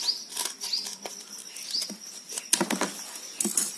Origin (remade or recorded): recorded